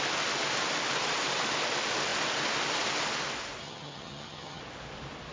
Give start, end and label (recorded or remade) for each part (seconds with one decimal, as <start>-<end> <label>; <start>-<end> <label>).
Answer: 0.0-3.6 recorded; 3.6-4.6 remade; 4.6-5.3 recorded